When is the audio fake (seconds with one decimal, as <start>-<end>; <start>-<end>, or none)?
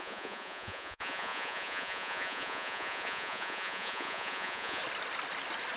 0.0-4.8